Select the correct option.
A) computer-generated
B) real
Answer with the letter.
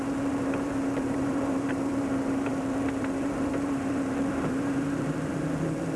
A